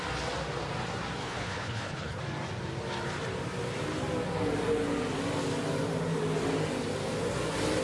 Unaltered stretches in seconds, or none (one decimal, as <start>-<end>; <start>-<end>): 0.0-1.2; 2.2-7.8